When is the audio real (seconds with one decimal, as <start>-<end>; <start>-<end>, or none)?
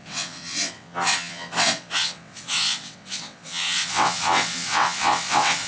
none